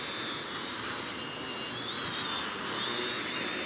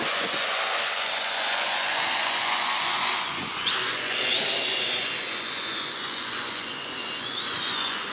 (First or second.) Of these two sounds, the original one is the first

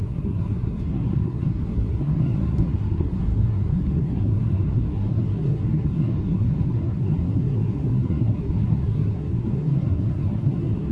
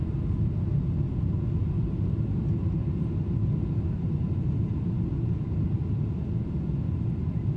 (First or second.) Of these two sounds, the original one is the second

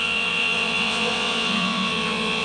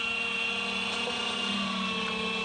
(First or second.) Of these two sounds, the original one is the second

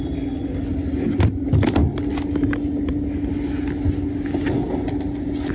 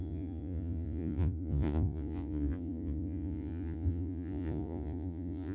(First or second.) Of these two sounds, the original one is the first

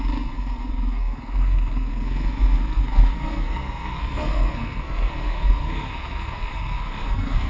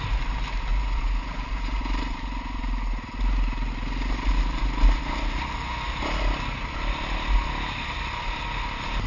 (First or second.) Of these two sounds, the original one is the second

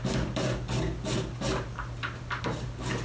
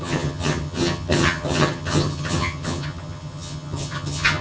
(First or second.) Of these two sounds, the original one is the first